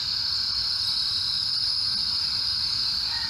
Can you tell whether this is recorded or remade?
recorded